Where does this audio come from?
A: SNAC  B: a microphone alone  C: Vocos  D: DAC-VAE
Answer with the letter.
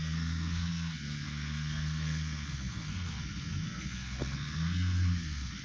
A